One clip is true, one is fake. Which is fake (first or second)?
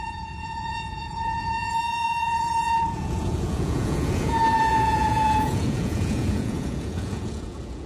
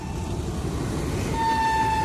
first